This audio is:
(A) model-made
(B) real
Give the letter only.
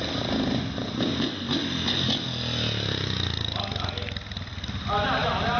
B